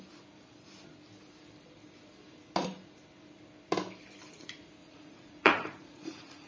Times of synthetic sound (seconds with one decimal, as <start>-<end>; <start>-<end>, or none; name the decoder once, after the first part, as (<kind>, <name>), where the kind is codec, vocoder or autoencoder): 4.8-6.5 (vocoder, Vocos)